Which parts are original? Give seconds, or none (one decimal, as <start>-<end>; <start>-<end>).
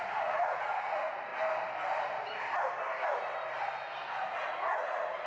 1.3-4.5